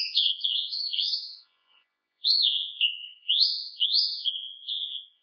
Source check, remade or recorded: remade